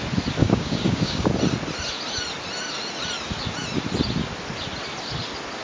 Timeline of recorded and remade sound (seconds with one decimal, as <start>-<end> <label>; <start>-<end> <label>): 0.0-0.4 recorded; 0.4-1.3 remade; 1.3-5.6 recorded

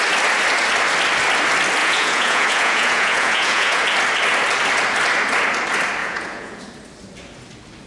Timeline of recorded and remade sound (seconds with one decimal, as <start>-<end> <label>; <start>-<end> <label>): 0.0-1.8 recorded; 1.8-3.8 remade; 3.8-6.0 recorded; 6.0-6.6 remade; 6.6-7.9 recorded

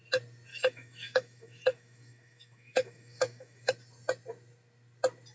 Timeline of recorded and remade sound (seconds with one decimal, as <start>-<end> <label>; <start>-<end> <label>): 0.0-0.5 recorded; 0.5-3.7 remade; 3.7-5.3 recorded

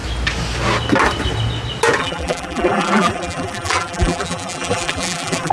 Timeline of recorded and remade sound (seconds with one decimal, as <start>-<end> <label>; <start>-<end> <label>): 0.0-2.0 recorded; 2.0-5.5 remade

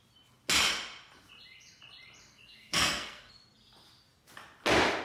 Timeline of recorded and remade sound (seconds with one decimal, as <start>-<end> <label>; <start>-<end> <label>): 0.0-2.3 recorded; 2.3-3.3 remade; 3.3-5.0 recorded

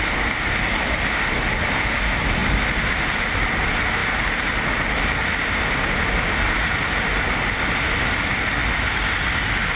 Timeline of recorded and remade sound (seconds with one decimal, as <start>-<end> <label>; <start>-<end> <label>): 0.0-9.8 recorded